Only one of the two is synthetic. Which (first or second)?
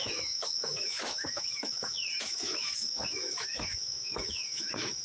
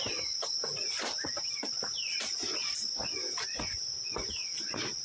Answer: first